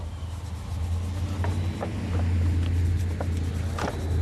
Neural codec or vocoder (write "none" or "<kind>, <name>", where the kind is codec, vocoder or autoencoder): none